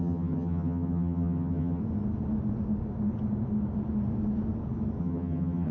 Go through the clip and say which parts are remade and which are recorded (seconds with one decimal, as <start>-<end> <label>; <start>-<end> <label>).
0.0-1.8 remade; 1.8-5.0 recorded; 5.0-5.7 remade